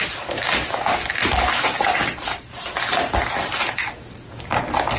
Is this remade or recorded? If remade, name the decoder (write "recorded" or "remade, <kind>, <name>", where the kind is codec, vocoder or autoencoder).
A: recorded